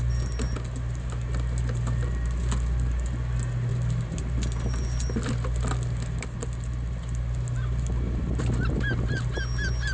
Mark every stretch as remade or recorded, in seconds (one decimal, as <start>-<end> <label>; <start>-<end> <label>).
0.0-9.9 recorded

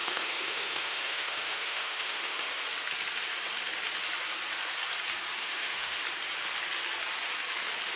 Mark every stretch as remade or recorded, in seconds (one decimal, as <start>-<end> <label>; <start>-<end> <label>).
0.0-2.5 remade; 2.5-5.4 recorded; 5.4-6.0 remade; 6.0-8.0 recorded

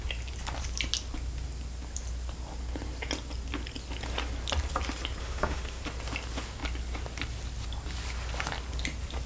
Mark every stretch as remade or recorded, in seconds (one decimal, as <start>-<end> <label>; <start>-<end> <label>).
0.0-5.2 recorded; 5.2-5.8 remade; 5.8-9.3 recorded

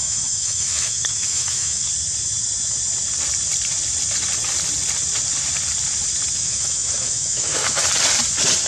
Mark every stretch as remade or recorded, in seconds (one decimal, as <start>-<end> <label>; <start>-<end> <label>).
0.0-1.9 remade; 1.9-6.3 recorded; 6.3-7.8 remade; 7.8-8.7 recorded

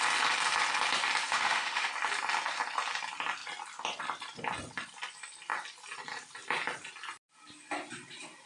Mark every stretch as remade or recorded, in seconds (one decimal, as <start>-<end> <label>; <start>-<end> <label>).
0.0-1.3 recorded; 1.3-1.9 remade; 1.9-8.5 recorded

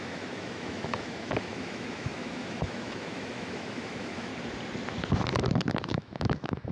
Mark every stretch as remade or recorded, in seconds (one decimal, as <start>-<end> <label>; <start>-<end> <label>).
0.0-4.3 remade; 4.3-5.8 recorded; 5.8-6.7 remade

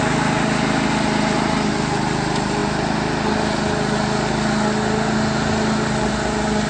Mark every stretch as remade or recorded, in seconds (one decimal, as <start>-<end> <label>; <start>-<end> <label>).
0.0-6.7 recorded

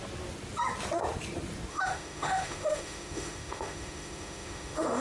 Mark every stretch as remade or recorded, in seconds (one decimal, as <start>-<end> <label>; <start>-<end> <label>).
0.0-1.7 recorded; 1.7-5.0 remade